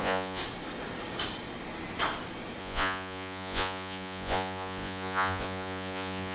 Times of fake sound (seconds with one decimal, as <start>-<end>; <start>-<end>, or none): 0.0-0.4; 2.6-6.3